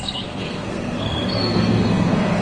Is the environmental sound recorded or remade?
remade